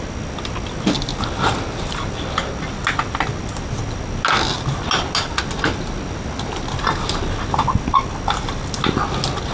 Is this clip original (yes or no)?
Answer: yes